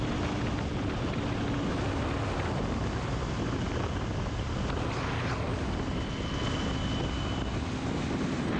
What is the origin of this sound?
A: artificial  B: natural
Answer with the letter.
B